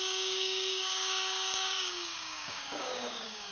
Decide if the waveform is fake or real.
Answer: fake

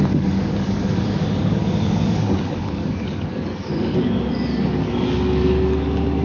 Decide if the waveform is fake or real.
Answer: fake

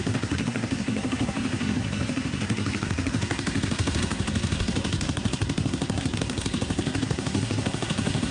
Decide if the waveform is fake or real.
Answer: fake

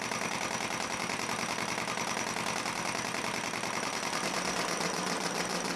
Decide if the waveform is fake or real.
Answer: real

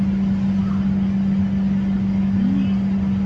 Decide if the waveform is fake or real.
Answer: real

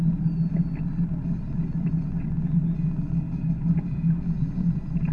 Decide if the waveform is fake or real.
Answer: real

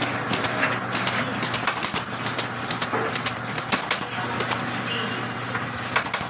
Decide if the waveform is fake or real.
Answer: real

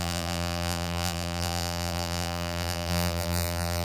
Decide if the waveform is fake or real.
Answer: fake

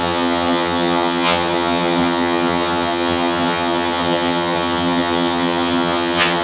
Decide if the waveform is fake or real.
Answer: fake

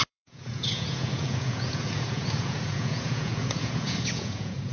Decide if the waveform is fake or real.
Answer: fake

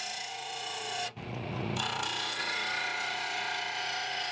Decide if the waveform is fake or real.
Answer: fake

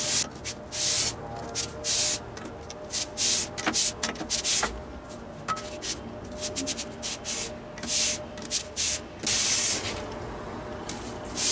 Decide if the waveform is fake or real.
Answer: real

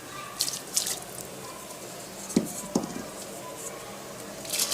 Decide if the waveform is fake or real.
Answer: real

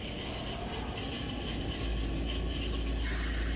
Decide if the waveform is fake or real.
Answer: real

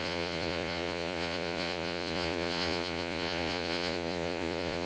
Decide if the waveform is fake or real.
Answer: fake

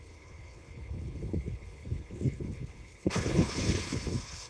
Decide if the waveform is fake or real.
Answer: fake